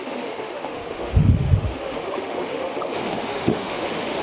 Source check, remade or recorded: remade